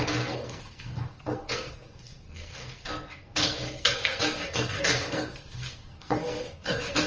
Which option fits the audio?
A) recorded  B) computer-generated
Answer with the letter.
B